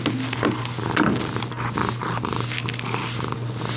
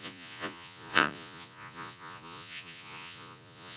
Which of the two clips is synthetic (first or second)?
second